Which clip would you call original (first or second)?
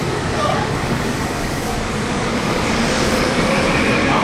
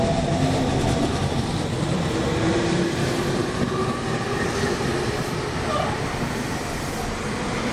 second